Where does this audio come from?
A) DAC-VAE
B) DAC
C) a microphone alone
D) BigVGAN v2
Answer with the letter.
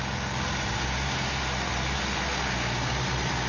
C